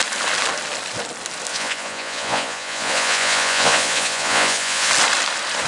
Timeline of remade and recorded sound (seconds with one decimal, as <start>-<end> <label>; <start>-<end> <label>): 0.0-1.5 recorded; 1.5-4.9 remade; 4.9-5.7 recorded